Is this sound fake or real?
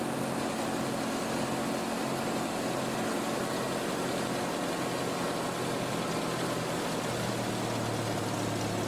real